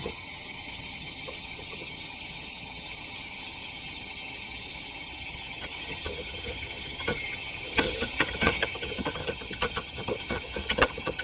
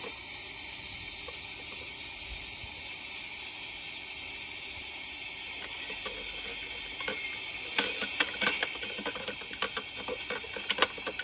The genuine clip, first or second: second